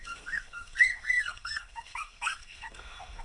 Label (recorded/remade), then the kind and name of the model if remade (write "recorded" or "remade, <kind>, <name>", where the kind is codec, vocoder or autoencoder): remade, codec, SNAC